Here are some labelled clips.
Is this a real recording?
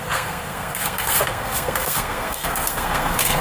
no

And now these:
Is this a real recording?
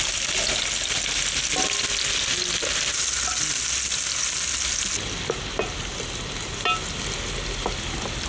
yes